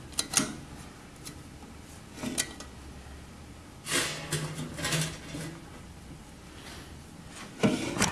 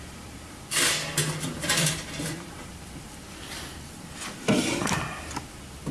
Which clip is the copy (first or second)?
second